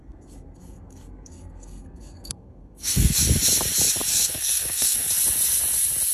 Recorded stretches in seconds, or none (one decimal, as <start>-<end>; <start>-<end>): 3.2-4.1; 5.1-6.1